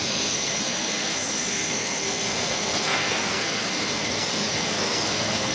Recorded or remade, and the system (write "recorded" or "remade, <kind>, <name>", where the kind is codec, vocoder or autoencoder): remade, codec, SNAC